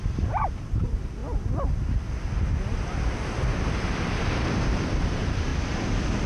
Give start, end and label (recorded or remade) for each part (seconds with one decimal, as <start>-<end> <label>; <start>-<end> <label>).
0.0-1.2 remade; 1.2-4.2 recorded; 4.2-5.5 remade; 5.5-6.3 recorded